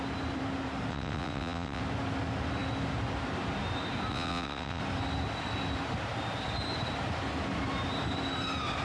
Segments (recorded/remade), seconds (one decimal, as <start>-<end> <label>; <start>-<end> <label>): 0.0-0.9 recorded; 0.9-1.8 remade; 1.8-4.1 recorded; 4.1-4.8 remade; 4.8-8.8 recorded